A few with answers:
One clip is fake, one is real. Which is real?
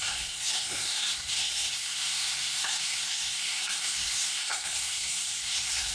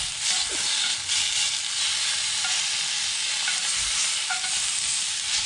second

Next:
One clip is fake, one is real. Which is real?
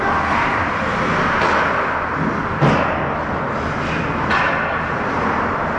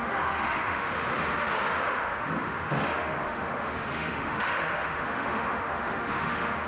first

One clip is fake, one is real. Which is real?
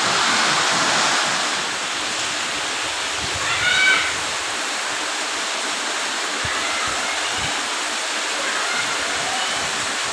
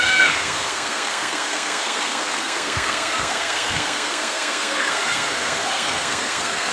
first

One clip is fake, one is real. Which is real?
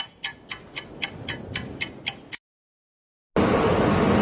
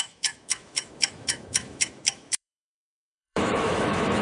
first